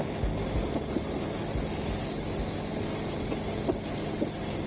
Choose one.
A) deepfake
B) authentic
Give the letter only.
B